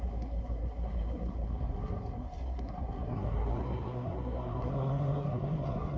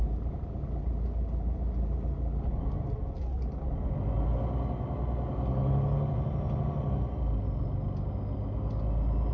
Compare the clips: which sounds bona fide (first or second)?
second